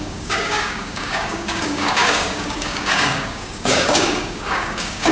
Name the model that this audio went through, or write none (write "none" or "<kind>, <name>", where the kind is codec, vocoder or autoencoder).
codec, DAC